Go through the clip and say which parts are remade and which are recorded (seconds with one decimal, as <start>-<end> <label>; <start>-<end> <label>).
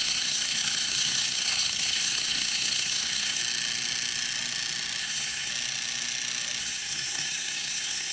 0.0-3.4 remade; 3.4-5.0 recorded; 5.0-5.5 remade; 5.5-6.6 recorded; 6.6-8.1 remade